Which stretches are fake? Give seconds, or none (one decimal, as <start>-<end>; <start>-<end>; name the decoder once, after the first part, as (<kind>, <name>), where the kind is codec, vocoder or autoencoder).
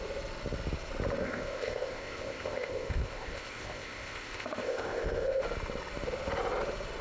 1.2-5.4 (codec, ZipCodec)